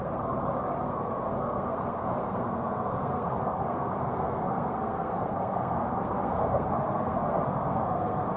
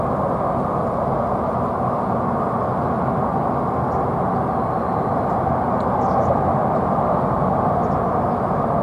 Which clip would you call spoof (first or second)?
first